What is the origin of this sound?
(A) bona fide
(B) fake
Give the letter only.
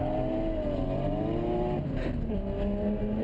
A